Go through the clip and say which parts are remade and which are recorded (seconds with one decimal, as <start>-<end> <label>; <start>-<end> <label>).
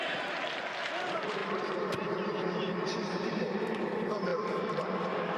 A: 0.0-5.4 remade